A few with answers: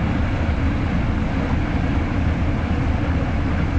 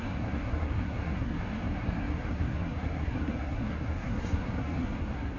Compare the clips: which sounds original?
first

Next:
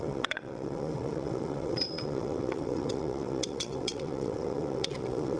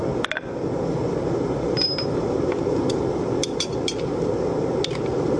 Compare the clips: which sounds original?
second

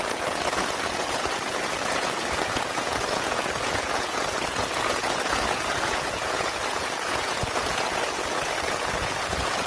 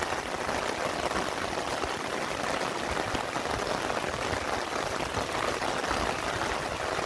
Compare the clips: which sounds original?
second